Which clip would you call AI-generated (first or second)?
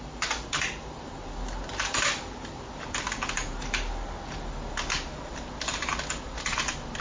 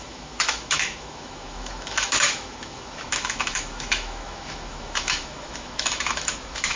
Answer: second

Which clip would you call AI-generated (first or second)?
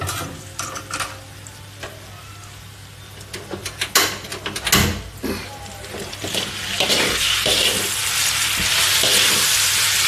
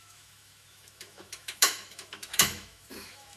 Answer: second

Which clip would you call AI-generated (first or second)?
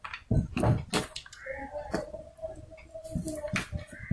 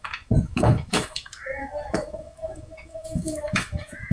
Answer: second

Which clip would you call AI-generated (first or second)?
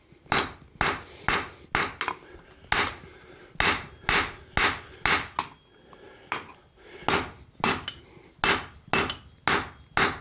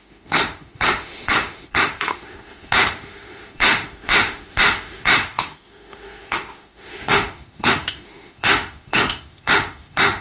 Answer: second